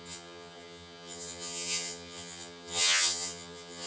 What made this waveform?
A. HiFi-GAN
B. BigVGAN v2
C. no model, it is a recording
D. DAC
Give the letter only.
A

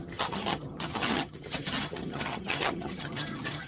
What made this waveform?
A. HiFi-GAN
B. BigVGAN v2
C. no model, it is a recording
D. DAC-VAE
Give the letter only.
A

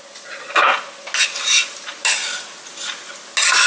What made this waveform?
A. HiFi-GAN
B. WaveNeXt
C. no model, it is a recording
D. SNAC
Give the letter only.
C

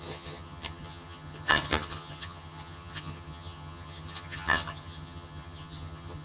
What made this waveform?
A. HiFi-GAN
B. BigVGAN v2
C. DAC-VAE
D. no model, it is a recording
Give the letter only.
A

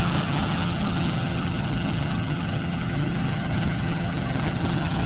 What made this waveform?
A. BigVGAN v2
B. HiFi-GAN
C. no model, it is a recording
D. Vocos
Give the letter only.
B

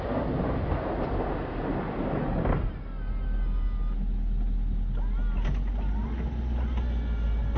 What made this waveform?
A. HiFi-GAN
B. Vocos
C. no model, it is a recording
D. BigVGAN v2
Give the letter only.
C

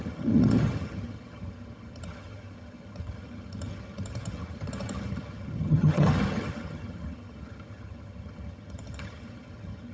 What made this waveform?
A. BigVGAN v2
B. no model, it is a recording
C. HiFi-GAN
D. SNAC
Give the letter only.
C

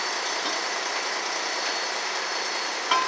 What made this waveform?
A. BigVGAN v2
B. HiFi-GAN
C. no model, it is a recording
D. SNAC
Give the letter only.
C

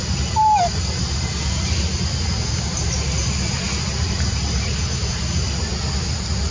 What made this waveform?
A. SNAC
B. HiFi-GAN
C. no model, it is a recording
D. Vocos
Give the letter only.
C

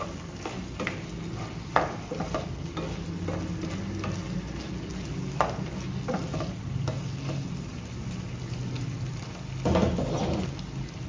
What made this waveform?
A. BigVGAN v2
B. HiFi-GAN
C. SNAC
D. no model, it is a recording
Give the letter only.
D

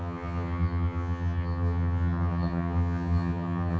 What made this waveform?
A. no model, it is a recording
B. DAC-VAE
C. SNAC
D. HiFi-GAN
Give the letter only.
D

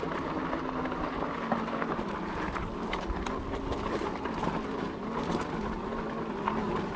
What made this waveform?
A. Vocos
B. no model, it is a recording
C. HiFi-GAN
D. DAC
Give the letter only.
B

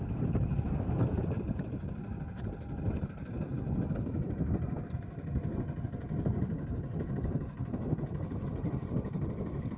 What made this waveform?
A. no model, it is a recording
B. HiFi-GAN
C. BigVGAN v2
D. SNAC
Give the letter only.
A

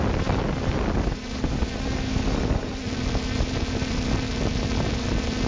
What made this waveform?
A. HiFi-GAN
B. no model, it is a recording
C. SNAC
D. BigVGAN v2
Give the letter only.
B